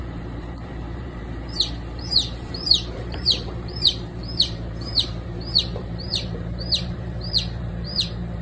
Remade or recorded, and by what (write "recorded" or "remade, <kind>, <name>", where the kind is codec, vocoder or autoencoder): remade, vocoder, BigVGAN v2